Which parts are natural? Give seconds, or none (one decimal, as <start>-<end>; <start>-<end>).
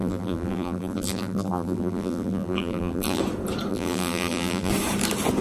3.2-3.7; 4.7-5.4